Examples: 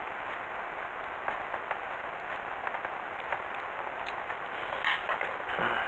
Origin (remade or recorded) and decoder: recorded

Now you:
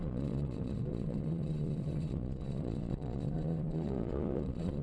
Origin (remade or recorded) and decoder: remade, vocoder, Vocos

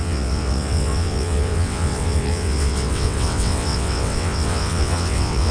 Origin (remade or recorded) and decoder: remade, vocoder, WaveNeXt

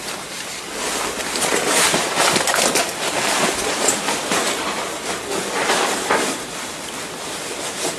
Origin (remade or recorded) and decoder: recorded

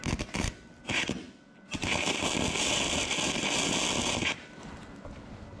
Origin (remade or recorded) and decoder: recorded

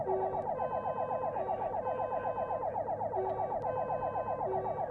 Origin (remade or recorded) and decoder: recorded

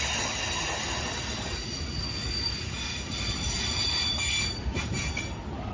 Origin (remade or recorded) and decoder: recorded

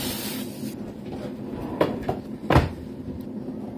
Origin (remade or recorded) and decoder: remade, vocoder, BigVGAN v2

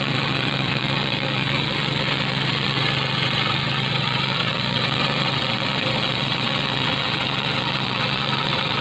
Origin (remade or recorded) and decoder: remade, vocoder, WaveNeXt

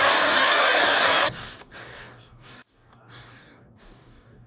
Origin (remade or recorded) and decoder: remade, codec, DAC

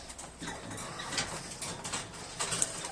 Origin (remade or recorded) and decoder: recorded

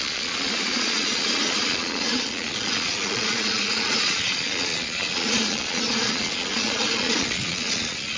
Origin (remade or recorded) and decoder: remade, vocoder, Vocos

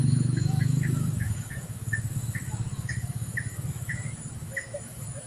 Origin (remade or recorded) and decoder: remade, autoencoder, DAC-VAE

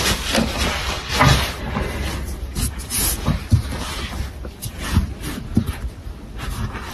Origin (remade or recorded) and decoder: recorded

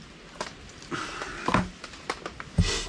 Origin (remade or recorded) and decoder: recorded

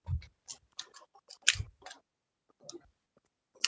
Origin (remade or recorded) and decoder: recorded